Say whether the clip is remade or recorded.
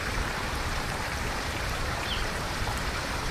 remade